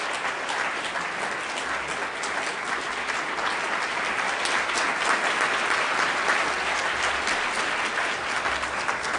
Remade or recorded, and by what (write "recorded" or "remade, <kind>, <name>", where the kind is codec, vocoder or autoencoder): recorded